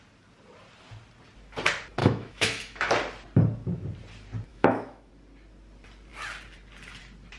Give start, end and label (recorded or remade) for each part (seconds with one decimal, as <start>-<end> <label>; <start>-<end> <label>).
0.0-2.0 recorded; 2.0-2.9 remade; 2.9-4.5 recorded; 4.5-5.1 remade; 5.1-7.4 recorded